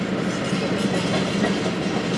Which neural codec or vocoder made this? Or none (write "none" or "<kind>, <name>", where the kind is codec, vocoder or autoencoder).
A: none